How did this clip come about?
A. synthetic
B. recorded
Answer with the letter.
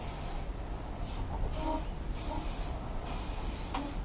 B